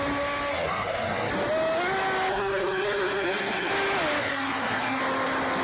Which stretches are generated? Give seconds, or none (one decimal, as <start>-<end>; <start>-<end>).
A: 0.5-1.3; 2.3-3.7; 4.2-5.0